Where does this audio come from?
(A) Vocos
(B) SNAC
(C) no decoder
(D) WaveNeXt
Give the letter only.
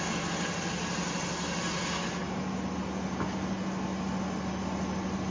C